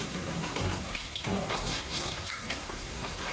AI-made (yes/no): yes